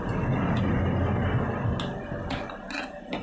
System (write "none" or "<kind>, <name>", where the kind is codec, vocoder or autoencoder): none